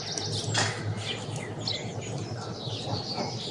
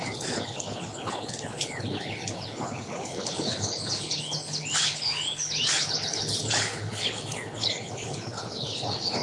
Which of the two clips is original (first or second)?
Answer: first